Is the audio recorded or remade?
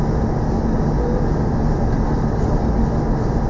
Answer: recorded